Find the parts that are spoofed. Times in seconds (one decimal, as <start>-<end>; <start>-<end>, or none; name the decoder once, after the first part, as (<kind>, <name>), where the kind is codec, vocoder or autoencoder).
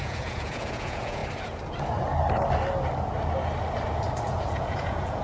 0.0-1.2 (vocoder, Vocos); 4.3-5.2